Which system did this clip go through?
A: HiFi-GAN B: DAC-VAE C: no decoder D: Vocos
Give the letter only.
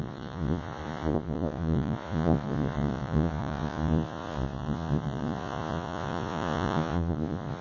D